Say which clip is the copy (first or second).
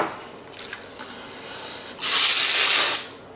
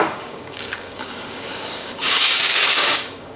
second